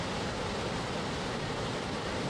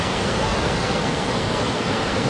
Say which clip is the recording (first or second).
first